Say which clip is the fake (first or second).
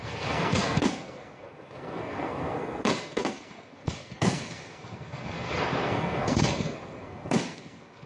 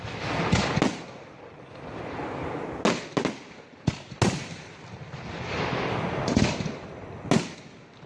first